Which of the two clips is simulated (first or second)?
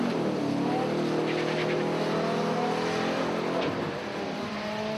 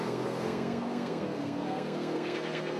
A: second